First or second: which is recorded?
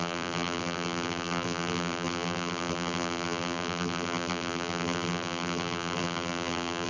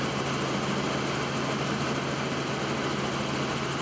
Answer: second